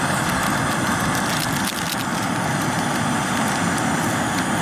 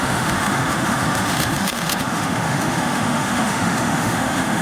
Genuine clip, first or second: first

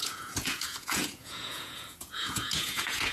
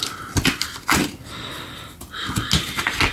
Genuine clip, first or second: second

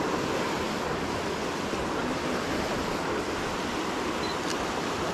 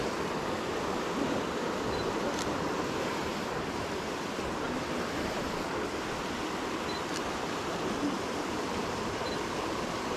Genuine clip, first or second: first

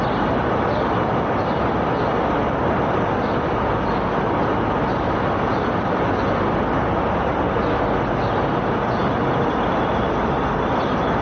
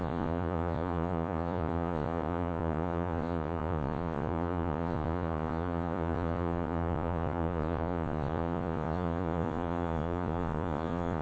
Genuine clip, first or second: first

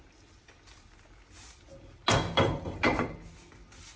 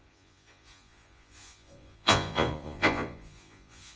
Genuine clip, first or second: first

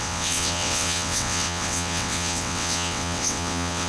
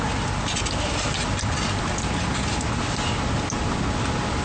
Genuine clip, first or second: second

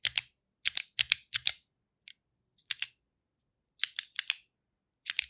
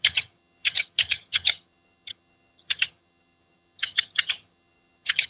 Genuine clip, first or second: first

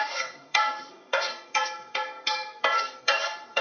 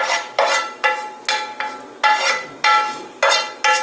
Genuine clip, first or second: second